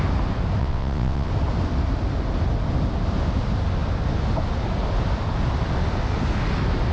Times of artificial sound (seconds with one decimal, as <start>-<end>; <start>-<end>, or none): 0.6-1.3